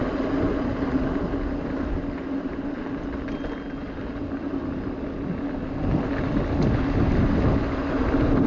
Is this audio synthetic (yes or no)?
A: no